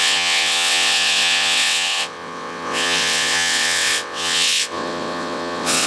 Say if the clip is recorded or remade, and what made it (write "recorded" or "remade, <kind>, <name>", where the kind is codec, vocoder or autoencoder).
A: remade, vocoder, WaveNeXt